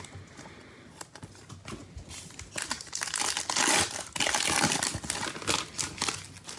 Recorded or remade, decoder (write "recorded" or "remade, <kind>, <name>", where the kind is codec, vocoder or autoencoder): recorded